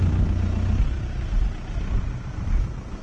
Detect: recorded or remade recorded